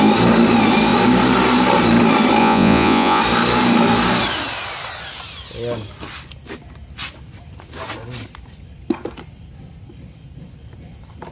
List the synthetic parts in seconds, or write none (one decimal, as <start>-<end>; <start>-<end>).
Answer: 2.4-3.2